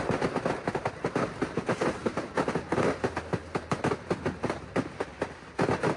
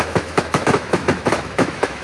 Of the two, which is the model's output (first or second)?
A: second